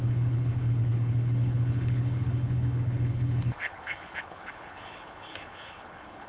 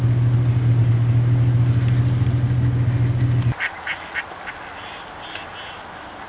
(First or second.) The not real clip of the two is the first